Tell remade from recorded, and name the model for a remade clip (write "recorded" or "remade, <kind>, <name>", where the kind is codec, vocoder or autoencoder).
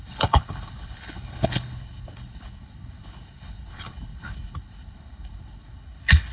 remade, codec, HILCodec